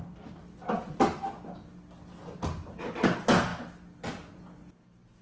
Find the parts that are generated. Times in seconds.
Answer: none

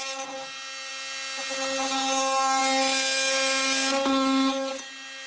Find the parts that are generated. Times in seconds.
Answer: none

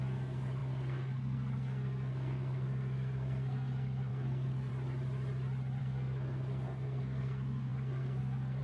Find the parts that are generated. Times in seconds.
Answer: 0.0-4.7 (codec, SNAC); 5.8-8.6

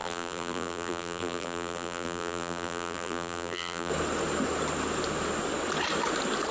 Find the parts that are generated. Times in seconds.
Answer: 0.0-3.9 (vocoder, BigVGAN v2)

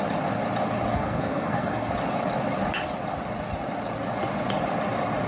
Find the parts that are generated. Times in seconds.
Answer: 0.9-1.9 (codec, SNAC)

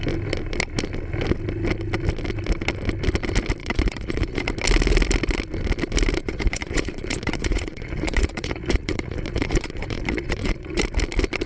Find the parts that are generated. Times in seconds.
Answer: 3.6-4.4 (vocoder, Vocos); 6.2-10.8

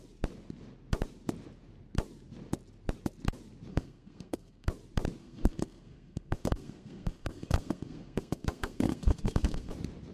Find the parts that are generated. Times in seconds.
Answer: 3.7-4.7 (codec, SNAC); 5.2-9.7

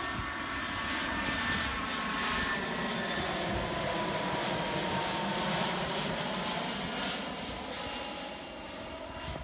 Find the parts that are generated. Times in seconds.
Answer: none